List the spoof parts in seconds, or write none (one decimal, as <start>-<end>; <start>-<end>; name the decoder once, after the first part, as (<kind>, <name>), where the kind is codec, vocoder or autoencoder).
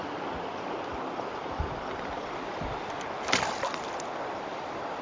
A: none